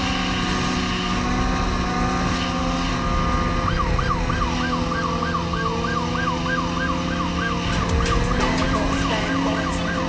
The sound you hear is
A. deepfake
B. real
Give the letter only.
B